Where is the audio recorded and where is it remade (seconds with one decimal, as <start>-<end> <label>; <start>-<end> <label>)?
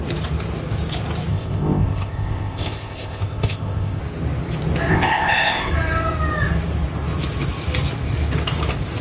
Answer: 0.0-1.3 recorded; 1.3-4.0 remade; 4.0-4.9 recorded; 4.9-5.7 remade; 5.7-9.0 recorded